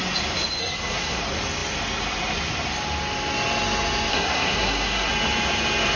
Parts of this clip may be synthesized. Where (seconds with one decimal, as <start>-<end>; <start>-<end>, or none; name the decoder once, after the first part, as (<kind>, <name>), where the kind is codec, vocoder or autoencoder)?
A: 0.6-1.2 (codec, SNAC); 4.1-5.1